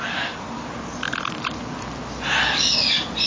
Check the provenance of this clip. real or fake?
real